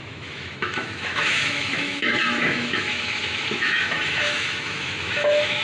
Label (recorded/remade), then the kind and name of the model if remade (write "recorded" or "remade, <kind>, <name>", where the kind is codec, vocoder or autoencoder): remade, autoencoder, DAC-VAE